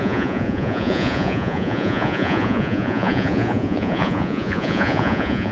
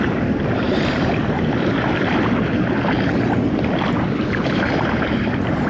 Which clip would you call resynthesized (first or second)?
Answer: first